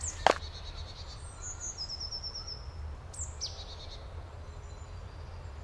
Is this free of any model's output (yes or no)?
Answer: yes